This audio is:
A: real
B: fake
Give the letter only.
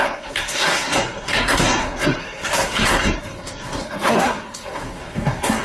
B